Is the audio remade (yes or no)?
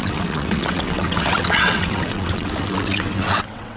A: yes